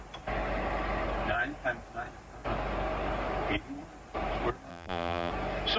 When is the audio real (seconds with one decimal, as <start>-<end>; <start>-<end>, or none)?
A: 0.0-4.7; 5.3-5.8